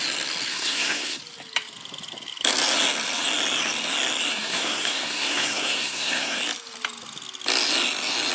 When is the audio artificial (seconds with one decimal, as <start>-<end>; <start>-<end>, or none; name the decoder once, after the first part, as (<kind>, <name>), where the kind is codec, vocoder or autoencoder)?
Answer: 0.5-1.2 (codec, SNAC); 4.3-6.4